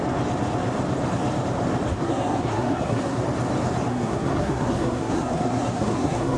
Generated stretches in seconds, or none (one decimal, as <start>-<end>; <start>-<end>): 1.9-3.2; 3.9-6.4